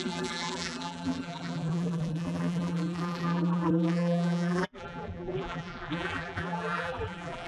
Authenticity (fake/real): fake